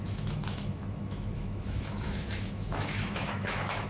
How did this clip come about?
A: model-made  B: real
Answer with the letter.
A